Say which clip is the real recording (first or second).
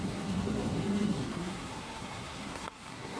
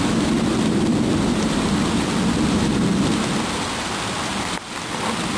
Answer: second